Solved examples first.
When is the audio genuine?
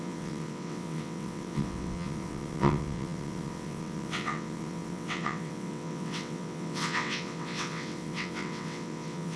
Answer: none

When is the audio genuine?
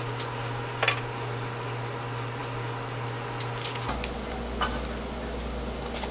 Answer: 0.0-6.1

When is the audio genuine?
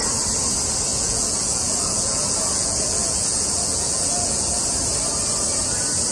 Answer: 0.0-0.9; 4.6-6.1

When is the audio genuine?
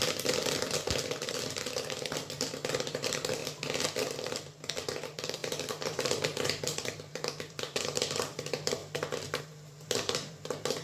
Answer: 3.4-4.0; 8.8-9.4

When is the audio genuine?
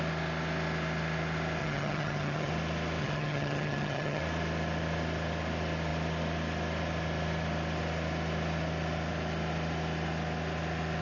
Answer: 0.0-1.6; 2.5-3.0; 4.2-11.0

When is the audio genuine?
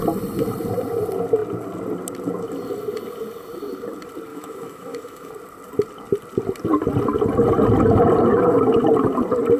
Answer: 0.0-4.3; 5.3-9.6